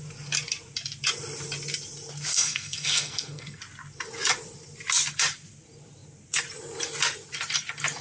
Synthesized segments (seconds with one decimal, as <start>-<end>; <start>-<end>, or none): 2.3-3.6